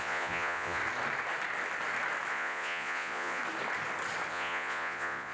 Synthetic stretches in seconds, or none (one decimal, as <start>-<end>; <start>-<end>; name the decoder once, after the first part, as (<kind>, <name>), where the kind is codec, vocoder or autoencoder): 0.0-0.8 (vocoder, Vocos); 2.3-3.4; 4.3-5.3